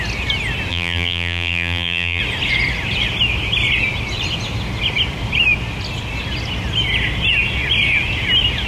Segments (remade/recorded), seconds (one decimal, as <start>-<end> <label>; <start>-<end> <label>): 0.0-0.7 recorded; 0.7-2.2 remade; 2.2-8.7 recorded